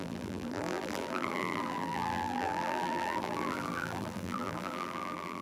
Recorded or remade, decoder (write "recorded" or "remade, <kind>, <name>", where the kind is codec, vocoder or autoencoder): remade, vocoder, BigVGAN v2